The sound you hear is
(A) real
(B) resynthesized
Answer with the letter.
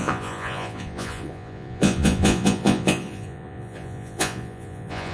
B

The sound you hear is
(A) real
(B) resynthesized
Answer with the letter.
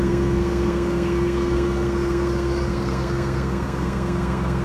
B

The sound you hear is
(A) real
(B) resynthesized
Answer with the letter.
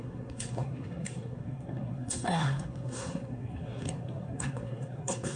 B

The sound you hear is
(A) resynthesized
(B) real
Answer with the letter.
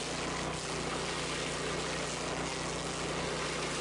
B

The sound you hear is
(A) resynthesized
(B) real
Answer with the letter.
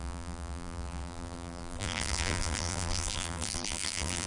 A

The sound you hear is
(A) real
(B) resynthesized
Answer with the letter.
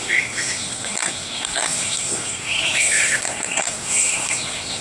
B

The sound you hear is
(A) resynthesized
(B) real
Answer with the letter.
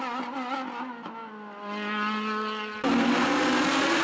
B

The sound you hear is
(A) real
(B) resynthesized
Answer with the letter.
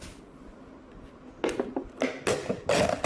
A